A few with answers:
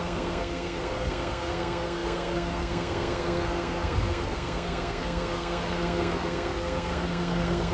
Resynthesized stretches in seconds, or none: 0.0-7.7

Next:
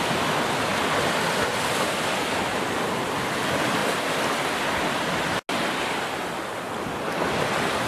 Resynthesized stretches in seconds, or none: none

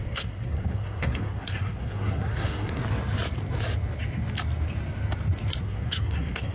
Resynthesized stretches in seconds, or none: 0.0-2.8; 5.6-6.5

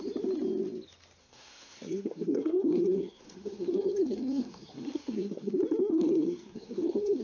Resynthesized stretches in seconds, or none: 1.2-5.5; 5.9-7.2